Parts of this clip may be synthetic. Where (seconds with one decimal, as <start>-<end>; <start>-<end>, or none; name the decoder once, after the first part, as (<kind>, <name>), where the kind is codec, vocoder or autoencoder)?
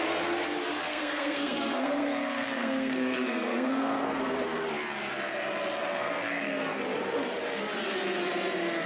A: 0.9-4.2 (codec, SNAC); 5.9-6.8